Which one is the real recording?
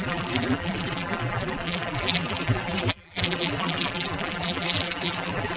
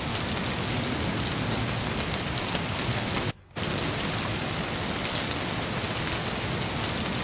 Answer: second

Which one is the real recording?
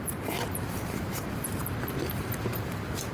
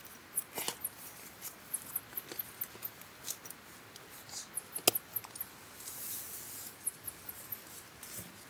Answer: second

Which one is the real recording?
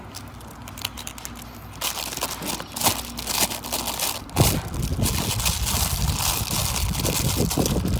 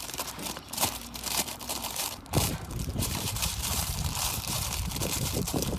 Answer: first